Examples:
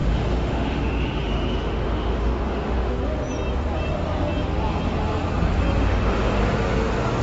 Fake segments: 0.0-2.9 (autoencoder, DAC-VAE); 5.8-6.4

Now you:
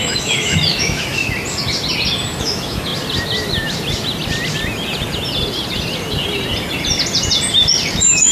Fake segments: 0.0-1.2 (autoencoder, DAC-VAE); 2.4-2.9; 7.9-8.3

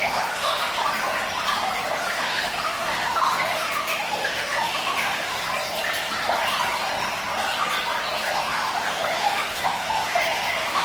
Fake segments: 0.0-0.8 (autoencoder, DAC-VAE); 2.1-5.4; 8.4-10.8

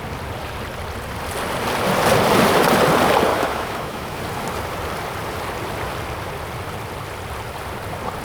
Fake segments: 3.3-4.2 (autoencoder, DAC-VAE)

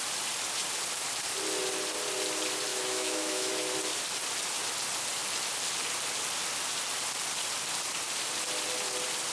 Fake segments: 2.7-3.5 (autoencoder, DAC-VAE)

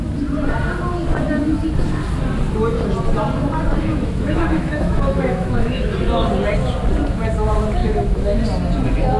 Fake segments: 3.9-5.9 (autoencoder, DAC-VAE); 7.8-8.4

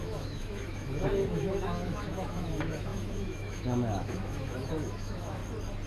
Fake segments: 0.0-5.4 (autoencoder, DAC-VAE)

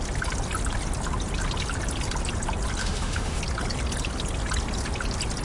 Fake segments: 2.8-3.4 (autoencoder, DAC-VAE)